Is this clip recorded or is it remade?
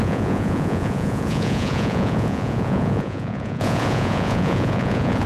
remade